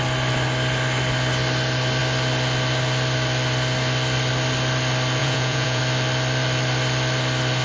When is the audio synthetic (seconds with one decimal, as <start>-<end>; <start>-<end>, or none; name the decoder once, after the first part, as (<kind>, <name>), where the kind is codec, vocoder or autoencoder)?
5.2-5.8 (vocoder, Vocos)